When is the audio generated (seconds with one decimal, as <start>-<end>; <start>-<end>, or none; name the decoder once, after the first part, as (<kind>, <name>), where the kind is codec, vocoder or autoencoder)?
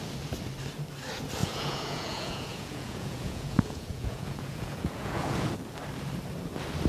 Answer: 1.4-5.5 (vocoder, Vocos)